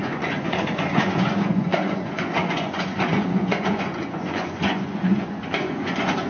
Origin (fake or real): fake